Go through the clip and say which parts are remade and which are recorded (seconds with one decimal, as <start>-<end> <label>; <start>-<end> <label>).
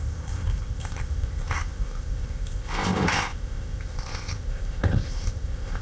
0.0-5.8 remade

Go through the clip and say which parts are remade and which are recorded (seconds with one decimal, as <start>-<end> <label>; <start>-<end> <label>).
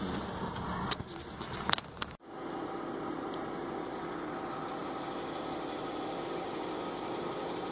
0.0-7.7 recorded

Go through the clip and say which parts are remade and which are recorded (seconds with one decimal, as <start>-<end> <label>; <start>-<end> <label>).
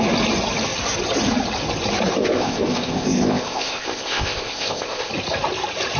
0.0-2.2 recorded; 2.2-5.1 remade; 5.1-6.0 recorded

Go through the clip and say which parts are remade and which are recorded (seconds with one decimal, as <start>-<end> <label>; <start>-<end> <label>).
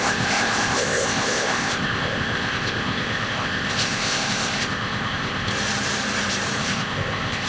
0.0-5.5 remade; 5.5-6.6 recorded; 6.6-7.5 remade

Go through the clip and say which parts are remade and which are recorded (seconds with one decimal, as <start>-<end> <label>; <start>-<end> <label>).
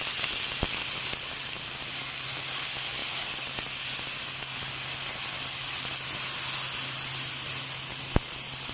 0.0-8.7 recorded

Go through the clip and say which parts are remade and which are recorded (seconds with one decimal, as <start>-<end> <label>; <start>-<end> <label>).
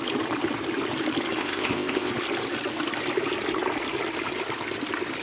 0.0-1.4 recorded; 1.4-2.1 remade; 2.1-5.2 recorded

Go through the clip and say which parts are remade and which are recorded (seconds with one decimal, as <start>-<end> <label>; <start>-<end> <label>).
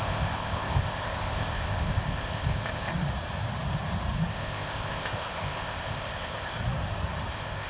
0.0-2.9 remade; 2.9-4.3 recorded; 4.3-6.6 remade; 6.6-7.3 recorded; 7.3-7.7 remade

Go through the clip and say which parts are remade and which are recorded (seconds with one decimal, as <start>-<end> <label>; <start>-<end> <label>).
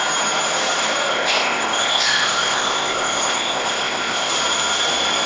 0.0-1.1 recorded; 1.1-4.3 remade; 4.3-5.3 recorded